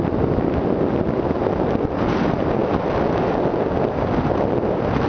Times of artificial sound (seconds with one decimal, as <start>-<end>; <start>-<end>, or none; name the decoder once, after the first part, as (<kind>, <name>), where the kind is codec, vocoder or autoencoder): none